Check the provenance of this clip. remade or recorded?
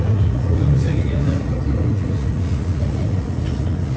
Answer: remade